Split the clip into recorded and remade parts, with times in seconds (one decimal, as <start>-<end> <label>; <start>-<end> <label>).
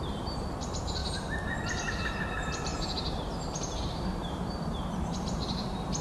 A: 0.0-1.0 remade; 1.0-2.2 recorded; 2.2-6.0 remade